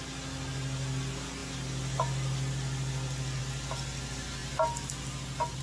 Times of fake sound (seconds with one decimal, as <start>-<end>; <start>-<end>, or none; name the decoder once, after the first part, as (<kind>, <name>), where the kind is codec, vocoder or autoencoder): none